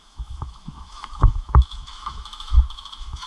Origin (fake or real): fake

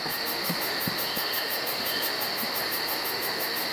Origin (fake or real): fake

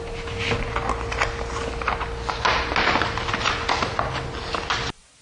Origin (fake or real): real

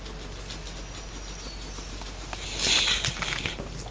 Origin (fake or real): real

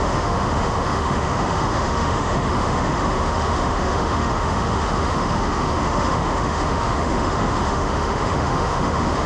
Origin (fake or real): fake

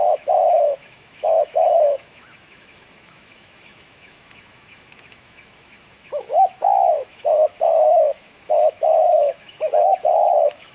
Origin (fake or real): fake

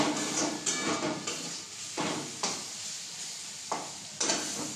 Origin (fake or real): real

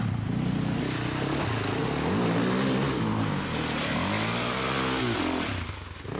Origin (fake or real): real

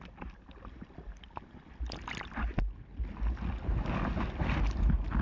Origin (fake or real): real